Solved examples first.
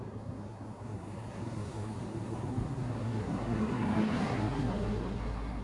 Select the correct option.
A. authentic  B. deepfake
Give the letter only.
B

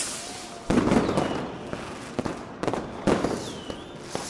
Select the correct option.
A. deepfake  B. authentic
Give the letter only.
B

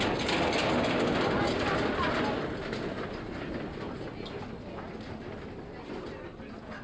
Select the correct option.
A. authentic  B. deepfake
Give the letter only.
A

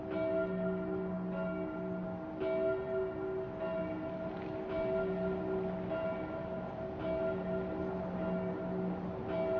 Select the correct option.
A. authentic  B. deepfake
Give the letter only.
A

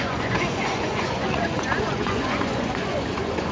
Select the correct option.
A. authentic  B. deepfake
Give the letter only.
B